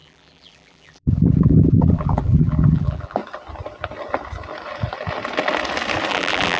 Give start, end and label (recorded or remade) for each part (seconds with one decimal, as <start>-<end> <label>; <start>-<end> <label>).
0.0-3.2 remade; 3.2-6.1 recorded; 6.1-6.6 remade